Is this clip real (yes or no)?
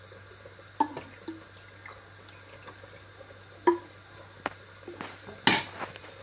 yes